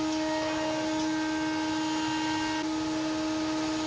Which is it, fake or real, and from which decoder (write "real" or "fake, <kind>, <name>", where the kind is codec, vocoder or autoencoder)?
real